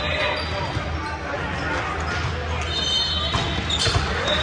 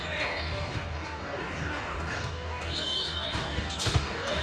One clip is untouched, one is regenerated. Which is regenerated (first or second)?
second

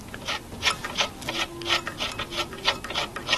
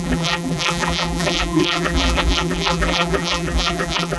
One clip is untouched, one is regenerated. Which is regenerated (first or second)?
second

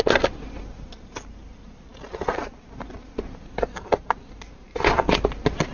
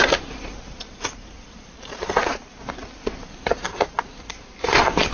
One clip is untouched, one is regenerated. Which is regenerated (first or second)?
second